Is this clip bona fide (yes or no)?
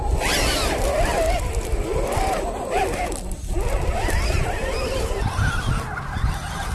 yes